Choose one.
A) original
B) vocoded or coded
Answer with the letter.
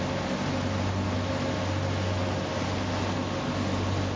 A